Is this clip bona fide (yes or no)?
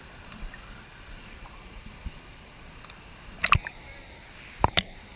no